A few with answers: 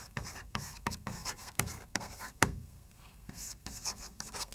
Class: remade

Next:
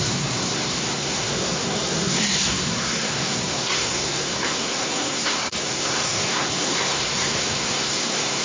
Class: remade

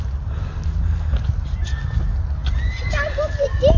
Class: recorded